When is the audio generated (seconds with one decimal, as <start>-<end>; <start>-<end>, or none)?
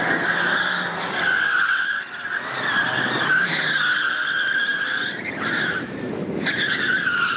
none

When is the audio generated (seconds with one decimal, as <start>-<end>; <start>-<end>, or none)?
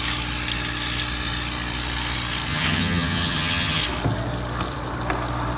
2.5-3.8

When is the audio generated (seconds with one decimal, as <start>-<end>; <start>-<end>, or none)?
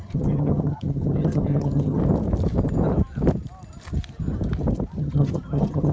0.0-2.0; 5.0-5.9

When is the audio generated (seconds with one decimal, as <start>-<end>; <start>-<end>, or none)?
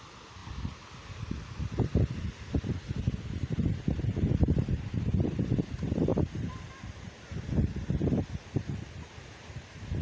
none